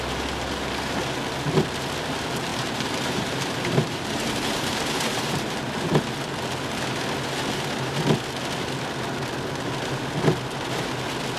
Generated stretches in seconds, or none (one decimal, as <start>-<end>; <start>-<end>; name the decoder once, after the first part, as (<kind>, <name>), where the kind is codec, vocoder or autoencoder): 2.5-6.0 (vocoder, BigVGAN v2)